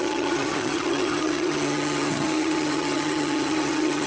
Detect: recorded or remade remade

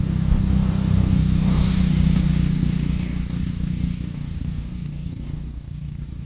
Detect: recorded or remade remade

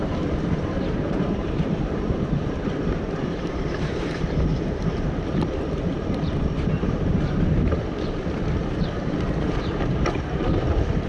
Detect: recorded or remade remade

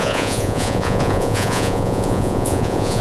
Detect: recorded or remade remade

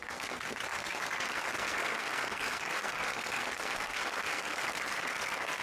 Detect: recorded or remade remade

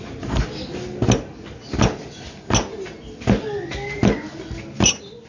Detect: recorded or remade recorded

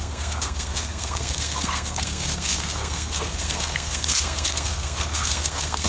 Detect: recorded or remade remade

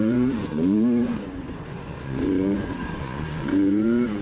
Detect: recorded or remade remade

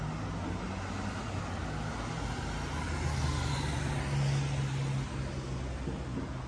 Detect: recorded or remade recorded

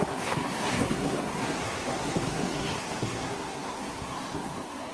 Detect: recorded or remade remade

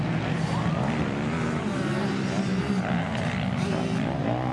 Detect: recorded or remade remade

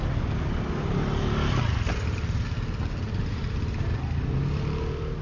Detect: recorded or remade recorded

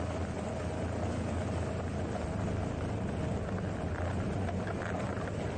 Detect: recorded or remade recorded